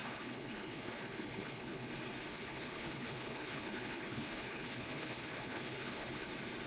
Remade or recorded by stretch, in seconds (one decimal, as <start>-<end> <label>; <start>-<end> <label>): 0.0-1.9 remade; 1.9-2.3 recorded; 2.3-6.3 remade; 6.3-6.7 recorded